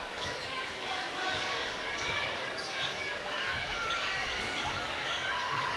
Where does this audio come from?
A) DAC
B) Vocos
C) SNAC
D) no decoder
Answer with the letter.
A